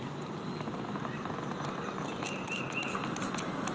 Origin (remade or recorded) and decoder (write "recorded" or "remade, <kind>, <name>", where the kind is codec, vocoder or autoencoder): recorded